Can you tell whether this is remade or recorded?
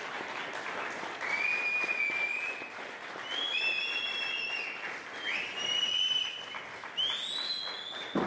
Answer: recorded